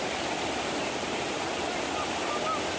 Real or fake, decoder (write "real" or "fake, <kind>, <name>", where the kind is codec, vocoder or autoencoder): real